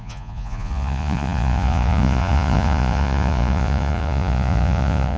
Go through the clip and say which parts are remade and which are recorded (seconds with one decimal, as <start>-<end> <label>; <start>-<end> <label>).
0.0-5.2 remade